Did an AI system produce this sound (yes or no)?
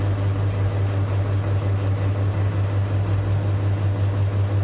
no